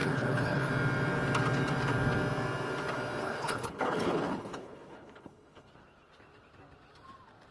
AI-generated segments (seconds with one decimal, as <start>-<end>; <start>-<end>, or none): 0.0-0.7; 3.2-5.7